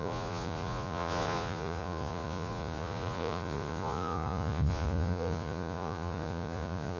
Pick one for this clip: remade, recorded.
remade